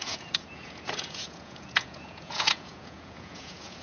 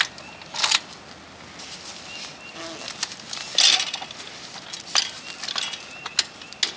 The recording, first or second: second